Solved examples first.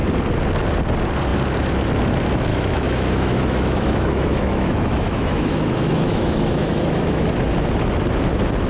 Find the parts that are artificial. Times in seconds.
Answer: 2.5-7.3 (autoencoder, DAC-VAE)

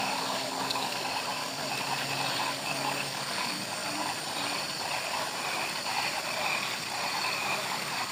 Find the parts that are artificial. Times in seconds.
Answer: 0.0-1.6 (codec, DAC); 2.4-3.8; 7.4-8.1

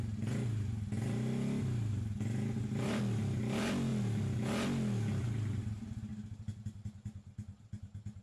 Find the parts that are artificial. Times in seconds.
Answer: none

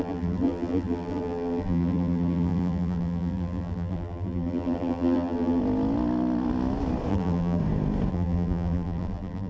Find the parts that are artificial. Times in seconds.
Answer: 0.0-5.6 (vocoder, BigVGAN v2); 7.1-7.6; 8.1-9.5

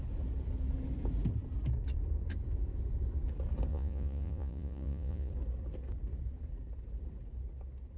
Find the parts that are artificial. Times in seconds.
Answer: 3.7-5.3 (vocoder, Vocos)